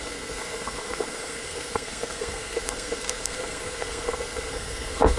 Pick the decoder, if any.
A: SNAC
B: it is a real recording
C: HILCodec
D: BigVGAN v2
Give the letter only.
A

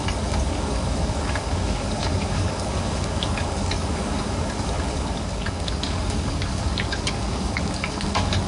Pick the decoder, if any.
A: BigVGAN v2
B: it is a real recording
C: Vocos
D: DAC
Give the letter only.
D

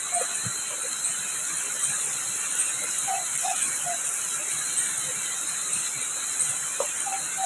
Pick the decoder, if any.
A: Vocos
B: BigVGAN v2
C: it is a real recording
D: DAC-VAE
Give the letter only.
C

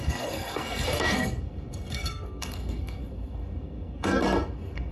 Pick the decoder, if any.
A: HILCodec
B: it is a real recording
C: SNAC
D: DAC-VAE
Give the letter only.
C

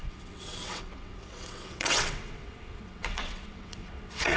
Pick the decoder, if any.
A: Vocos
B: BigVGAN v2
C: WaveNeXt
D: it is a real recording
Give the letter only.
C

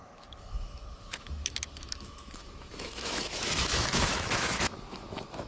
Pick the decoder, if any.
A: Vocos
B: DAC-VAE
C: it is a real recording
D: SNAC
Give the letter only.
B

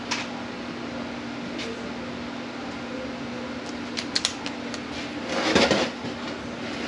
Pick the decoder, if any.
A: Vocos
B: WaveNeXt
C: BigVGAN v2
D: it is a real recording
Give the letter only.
D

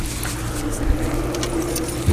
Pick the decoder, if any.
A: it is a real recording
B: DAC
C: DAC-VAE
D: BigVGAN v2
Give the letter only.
A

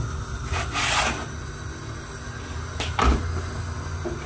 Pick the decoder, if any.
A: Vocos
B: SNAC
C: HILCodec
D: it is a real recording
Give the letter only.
D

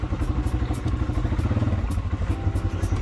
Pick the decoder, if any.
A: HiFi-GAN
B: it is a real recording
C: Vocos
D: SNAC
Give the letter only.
B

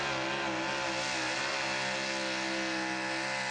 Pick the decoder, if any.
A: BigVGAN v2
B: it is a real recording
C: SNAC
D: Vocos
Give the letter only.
B